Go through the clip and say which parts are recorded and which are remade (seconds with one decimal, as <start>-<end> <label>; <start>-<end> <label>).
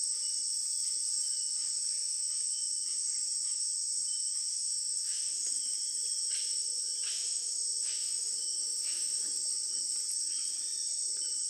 0.0-4.5 recorded; 4.5-5.6 remade; 5.6-7.1 recorded; 7.1-9.2 remade; 9.2-11.5 recorded